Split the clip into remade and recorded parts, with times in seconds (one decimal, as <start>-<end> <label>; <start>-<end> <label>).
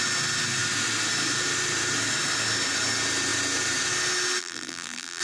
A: 0.0-4.4 recorded; 4.4-5.2 remade